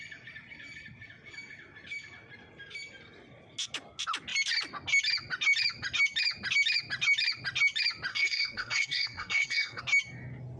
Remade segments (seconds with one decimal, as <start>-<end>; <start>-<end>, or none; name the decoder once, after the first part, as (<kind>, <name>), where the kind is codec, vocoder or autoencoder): 8.1-9.8 (codec, SNAC)